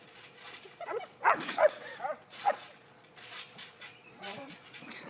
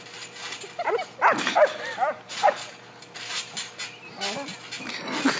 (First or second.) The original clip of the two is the second